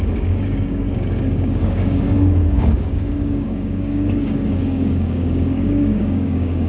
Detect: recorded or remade remade